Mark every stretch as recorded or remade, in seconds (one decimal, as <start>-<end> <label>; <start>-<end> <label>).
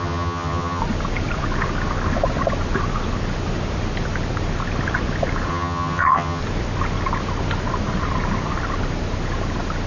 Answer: 0.0-0.8 remade; 0.8-5.5 recorded; 5.5-6.4 remade; 6.4-9.9 recorded